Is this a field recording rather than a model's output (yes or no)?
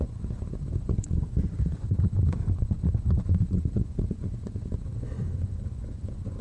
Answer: no